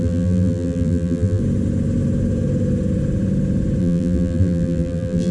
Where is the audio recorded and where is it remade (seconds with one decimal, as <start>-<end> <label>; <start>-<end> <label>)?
0.0-1.4 remade; 1.4-3.8 recorded; 3.8-5.3 remade